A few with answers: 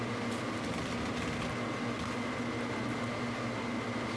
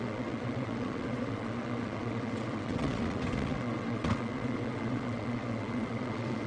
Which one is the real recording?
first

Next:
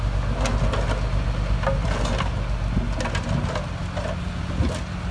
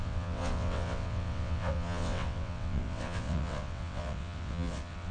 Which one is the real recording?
first